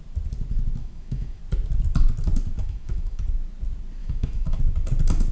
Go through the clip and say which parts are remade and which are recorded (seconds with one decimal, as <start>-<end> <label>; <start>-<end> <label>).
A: 0.0-0.8 recorded; 0.8-1.4 remade; 1.4-2.6 recorded; 2.6-3.2 remade; 3.2-4.0 recorded; 4.0-4.6 remade; 4.6-5.3 recorded